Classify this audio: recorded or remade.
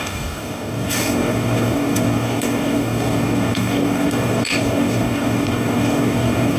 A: remade